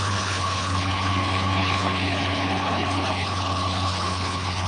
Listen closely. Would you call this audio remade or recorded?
remade